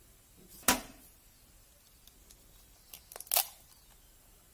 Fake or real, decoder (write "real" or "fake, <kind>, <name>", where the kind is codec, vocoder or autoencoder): real